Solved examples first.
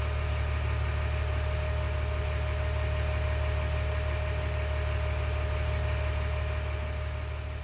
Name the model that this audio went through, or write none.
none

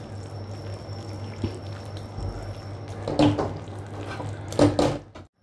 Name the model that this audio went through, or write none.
none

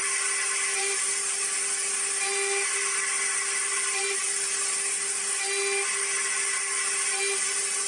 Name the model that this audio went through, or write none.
none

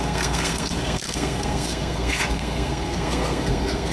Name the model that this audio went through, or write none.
codec, SNAC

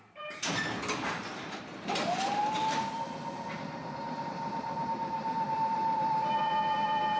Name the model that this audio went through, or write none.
vocoder, BigVGAN v2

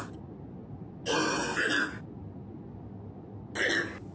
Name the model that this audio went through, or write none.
none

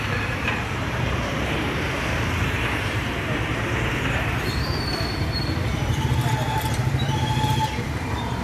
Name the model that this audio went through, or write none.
vocoder, BigVGAN v2